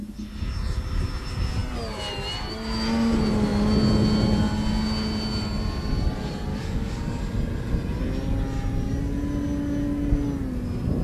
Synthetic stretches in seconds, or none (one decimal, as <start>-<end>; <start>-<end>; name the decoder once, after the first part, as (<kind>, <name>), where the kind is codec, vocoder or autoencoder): 6.5-7.2 (codec, DAC)